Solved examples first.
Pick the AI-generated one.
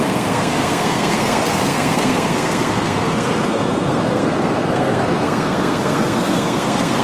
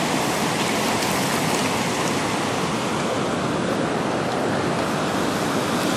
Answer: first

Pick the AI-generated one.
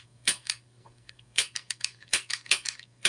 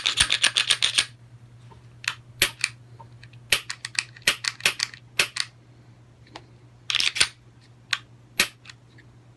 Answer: first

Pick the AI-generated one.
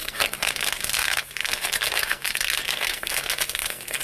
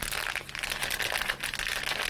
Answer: first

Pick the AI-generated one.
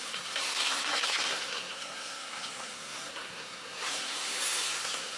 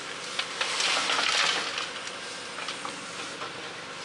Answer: first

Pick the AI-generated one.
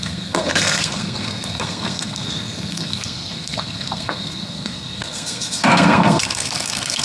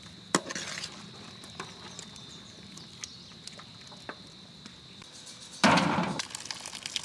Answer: first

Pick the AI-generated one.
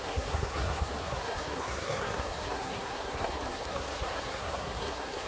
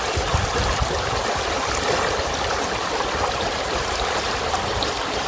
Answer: first